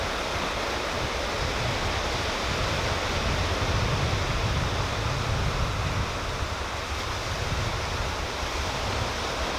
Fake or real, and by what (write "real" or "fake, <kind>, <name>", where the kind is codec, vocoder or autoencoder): real